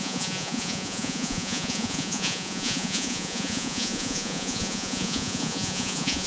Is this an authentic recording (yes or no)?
no